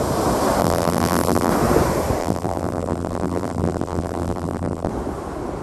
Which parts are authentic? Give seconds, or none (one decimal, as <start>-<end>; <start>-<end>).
0.0-0.6; 1.5-2.2; 4.9-5.6